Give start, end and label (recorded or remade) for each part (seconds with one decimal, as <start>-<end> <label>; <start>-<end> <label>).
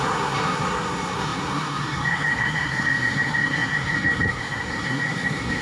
0.0-5.6 remade